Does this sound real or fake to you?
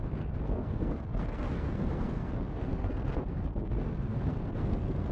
fake